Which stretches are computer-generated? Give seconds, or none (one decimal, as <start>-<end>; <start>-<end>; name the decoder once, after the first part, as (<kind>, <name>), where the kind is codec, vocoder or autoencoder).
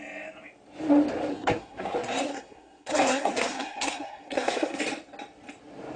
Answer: 1.3-4.8 (codec, SNAC)